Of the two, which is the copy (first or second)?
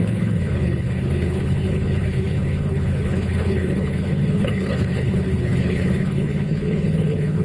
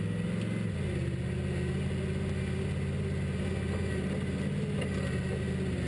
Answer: first